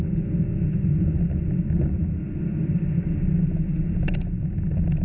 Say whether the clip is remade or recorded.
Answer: recorded